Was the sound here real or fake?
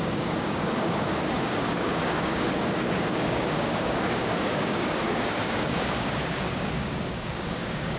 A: fake